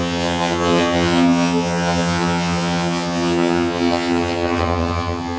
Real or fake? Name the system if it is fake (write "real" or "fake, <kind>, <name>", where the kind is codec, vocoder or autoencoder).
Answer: fake, vocoder, HiFi-GAN